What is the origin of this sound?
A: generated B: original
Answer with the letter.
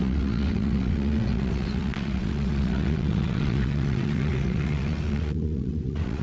A